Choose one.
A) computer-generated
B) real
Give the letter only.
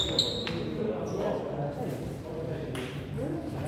B